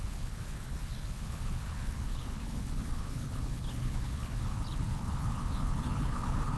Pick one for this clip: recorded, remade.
remade